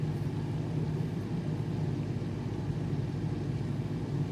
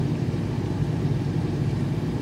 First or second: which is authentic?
first